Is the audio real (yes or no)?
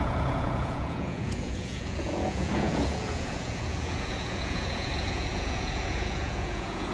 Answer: no